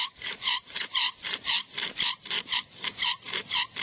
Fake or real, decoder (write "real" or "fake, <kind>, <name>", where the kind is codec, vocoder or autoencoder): fake, vocoder, BigVGAN v2